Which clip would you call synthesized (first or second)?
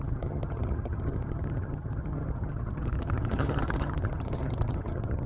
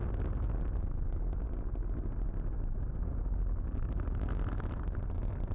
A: first